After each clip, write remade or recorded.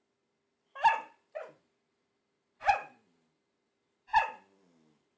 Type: recorded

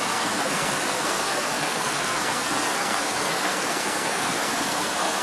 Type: remade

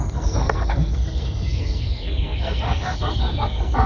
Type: remade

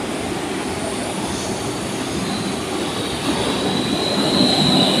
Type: recorded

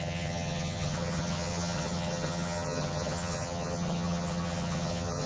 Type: remade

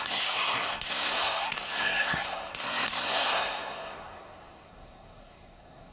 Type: remade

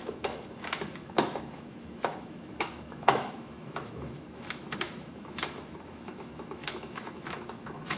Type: remade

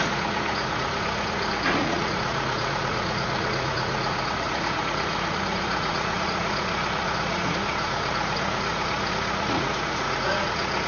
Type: remade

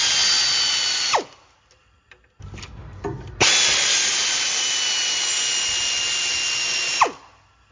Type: recorded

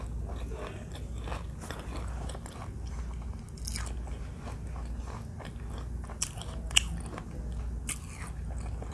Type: recorded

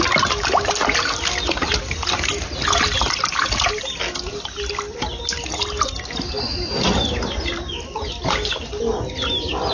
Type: recorded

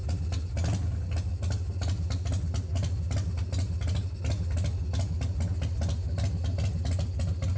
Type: recorded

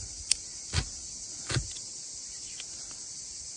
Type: recorded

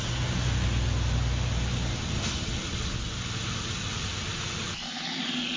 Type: recorded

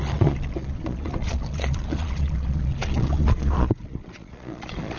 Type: remade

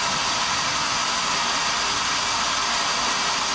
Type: recorded